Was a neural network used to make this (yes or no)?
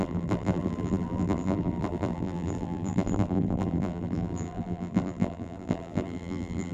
yes